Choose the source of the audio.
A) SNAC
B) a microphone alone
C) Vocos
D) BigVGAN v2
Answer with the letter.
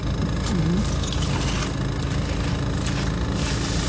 B